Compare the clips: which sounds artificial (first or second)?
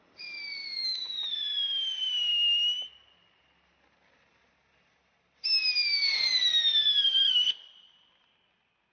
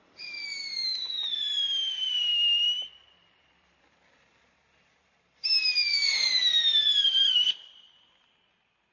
second